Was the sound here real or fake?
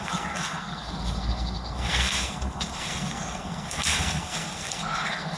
fake